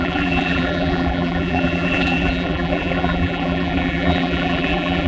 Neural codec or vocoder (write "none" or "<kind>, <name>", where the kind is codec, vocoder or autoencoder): vocoder, BigVGAN v2